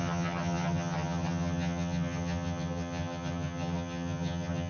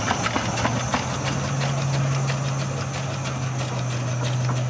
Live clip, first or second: second